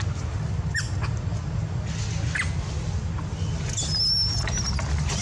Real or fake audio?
real